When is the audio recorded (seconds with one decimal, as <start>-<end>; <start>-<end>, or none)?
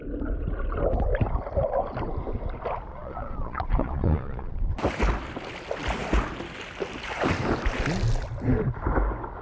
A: 0.0-2.9; 4.8-9.4